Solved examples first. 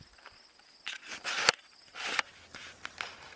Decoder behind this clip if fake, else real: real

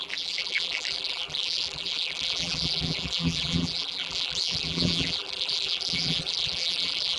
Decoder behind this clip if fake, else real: fake, vocoder, BigVGAN v2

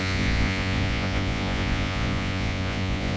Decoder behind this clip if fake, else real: fake, vocoder, Vocos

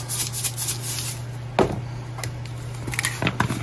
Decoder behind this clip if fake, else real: real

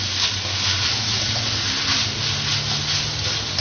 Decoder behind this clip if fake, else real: real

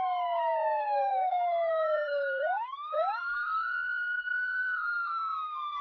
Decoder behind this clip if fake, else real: fake, codec, SNAC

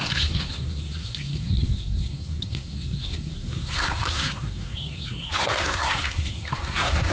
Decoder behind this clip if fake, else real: fake, codec, SNAC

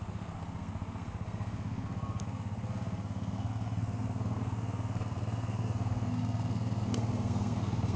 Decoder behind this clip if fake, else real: fake, codec, SNAC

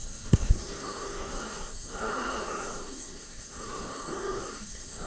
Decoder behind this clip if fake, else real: fake, codec, SNAC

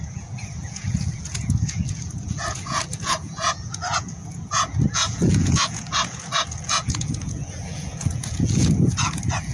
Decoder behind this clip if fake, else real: fake, vocoder, Vocos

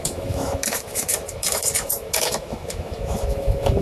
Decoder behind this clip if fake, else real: fake, autoencoder, DAC-VAE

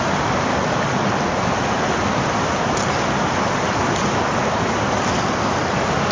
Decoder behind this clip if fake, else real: real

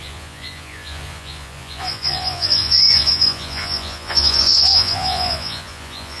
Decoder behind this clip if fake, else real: fake, vocoder, Vocos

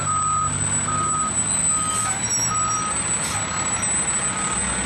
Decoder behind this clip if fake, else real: real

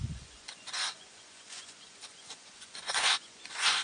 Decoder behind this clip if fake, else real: fake, vocoder, Vocos